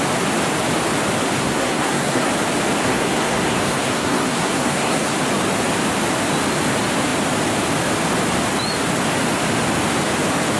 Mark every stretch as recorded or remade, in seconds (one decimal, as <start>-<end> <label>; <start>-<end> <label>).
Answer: 0.0-1.4 recorded; 1.4-2.3 remade; 2.3-2.8 recorded; 2.8-5.2 remade; 5.2-10.6 recorded